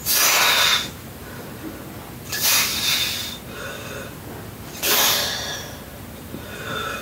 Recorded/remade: recorded